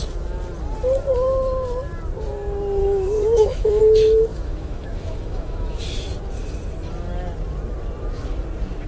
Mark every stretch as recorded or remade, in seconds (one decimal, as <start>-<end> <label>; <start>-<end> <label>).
0.0-2.8 recorded; 2.8-3.8 remade; 3.8-4.3 recorded; 4.3-5.8 remade; 5.8-8.9 recorded